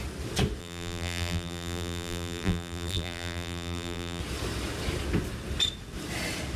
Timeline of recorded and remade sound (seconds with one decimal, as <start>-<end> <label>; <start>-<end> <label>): 0.0-0.6 recorded; 0.6-4.2 remade; 4.2-6.6 recorded